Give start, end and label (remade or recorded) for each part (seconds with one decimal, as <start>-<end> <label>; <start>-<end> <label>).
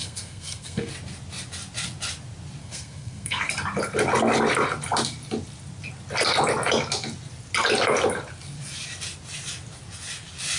0.0-0.9 remade; 0.9-2.6 recorded; 2.6-3.5 remade; 3.5-10.6 recorded